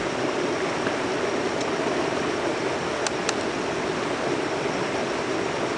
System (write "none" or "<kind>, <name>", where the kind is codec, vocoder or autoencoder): none